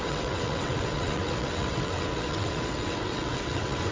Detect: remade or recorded remade